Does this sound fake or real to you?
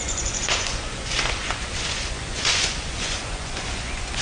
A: fake